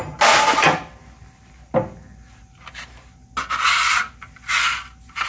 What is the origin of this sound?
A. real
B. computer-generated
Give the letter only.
A